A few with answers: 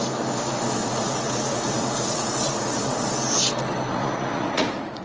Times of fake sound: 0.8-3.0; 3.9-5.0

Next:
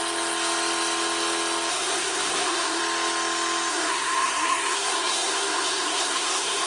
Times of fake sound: 1.7-2.8; 3.7-6.7